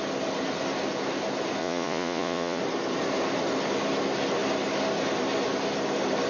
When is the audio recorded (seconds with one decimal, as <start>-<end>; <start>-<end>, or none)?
0.0-1.6; 2.6-6.3